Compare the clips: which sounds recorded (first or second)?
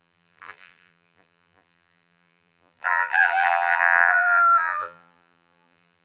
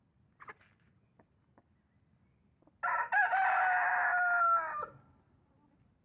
second